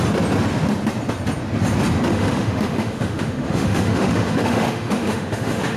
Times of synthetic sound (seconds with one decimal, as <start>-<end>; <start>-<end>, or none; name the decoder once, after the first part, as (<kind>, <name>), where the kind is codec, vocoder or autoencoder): 2.1-5.8 (autoencoder, DAC-VAE)